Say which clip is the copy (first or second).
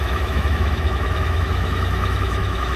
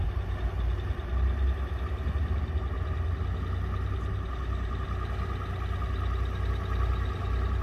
first